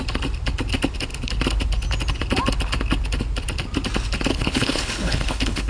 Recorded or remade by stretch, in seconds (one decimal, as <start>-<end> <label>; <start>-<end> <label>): 0.0-4.3 recorded; 4.3-5.7 remade